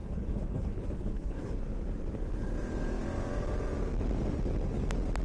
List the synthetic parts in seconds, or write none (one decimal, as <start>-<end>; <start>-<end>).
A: 0.0-1.6